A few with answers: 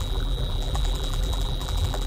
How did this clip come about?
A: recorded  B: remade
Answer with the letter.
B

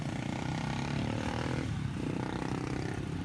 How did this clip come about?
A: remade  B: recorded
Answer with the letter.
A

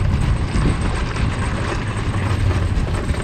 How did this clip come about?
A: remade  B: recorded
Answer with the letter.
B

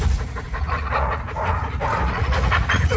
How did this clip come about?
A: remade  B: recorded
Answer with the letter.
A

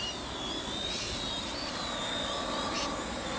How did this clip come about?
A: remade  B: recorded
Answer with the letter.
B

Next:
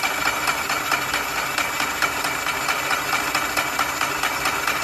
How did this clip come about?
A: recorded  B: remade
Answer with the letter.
A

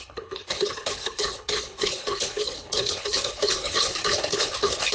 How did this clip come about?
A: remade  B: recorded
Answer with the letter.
A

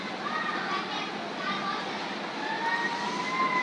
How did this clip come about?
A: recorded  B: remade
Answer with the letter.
A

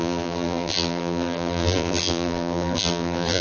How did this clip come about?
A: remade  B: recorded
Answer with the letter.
A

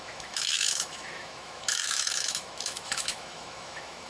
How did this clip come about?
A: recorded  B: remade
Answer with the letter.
B